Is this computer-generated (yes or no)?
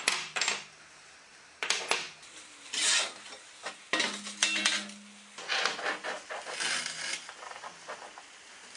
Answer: no